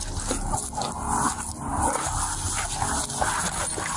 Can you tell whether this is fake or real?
real